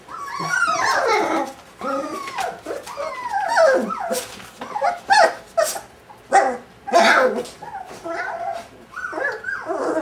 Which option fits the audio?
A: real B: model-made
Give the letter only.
A